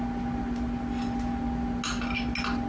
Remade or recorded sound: recorded